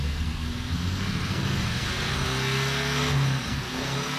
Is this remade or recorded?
remade